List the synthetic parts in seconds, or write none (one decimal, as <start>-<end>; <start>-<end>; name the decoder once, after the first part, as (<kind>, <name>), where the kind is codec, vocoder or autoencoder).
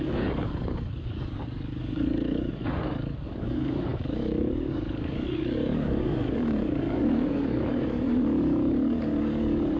0.0-9.8 (codec, DAC)